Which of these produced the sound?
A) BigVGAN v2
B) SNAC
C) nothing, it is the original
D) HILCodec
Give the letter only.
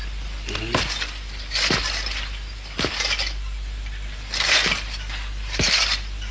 C